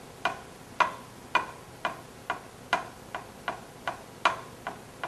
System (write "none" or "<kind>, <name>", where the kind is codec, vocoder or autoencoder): none